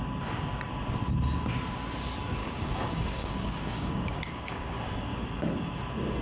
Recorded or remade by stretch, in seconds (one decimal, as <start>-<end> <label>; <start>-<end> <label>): 0.0-2.4 recorded; 2.4-5.7 remade; 5.7-6.2 recorded